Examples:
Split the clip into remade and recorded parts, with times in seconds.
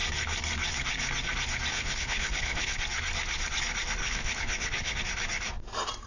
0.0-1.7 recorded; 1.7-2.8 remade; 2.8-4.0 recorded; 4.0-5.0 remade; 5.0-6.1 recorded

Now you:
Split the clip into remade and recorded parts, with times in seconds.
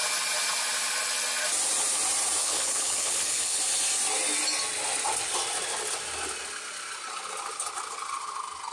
0.0-2.4 recorded; 2.4-3.6 remade; 3.6-8.7 recorded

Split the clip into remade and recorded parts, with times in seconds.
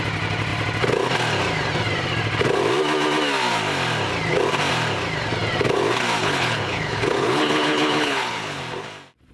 0.0-6.2 recorded; 6.2-8.6 remade; 8.6-9.3 recorded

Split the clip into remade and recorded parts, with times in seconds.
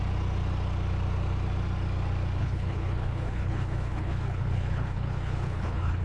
0.0-2.4 recorded; 2.4-6.0 remade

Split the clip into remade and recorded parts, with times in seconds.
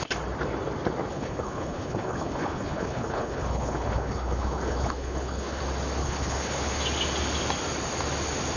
0.0-1.1 recorded; 1.1-5.6 remade; 5.6-6.0 recorded; 6.0-6.7 remade; 6.7-8.6 recorded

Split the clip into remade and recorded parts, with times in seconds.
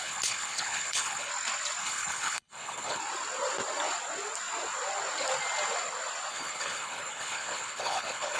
0.0-1.3 remade; 1.3-1.8 recorded; 1.8-3.0 remade; 3.0-6.3 recorded; 6.3-8.4 remade